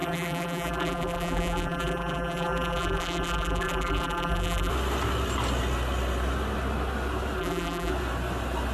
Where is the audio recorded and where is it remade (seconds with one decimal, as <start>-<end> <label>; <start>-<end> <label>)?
0.0-4.7 remade; 4.7-7.4 recorded; 7.4-7.9 remade; 7.9-8.7 recorded